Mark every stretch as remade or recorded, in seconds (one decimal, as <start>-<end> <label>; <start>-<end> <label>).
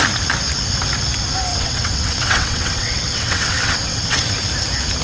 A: 0.0-1.5 recorded; 1.5-4.3 remade; 4.3-5.0 recorded